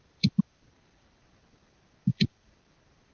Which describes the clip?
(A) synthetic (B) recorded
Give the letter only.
A